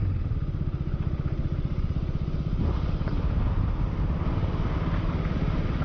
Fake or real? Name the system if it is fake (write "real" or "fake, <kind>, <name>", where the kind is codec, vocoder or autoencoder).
real